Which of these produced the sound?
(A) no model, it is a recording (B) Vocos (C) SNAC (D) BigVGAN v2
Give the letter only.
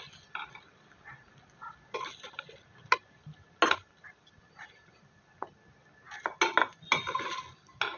A